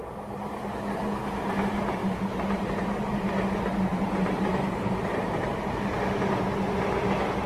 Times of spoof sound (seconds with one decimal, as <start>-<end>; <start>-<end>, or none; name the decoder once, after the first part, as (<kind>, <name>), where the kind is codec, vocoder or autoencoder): 2.0-3.4 (vocoder, BigVGAN v2); 3.9-5.9